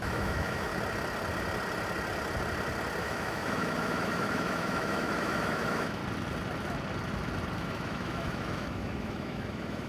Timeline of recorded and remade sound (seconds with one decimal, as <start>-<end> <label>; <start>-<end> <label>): 0.0-0.7 remade; 0.7-3.0 recorded; 3.0-6.0 remade; 6.0-7.6 recorded; 7.6-9.9 remade